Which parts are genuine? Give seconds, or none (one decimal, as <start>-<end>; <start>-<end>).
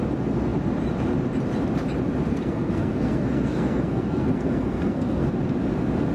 0.0-2.3; 5.3-6.1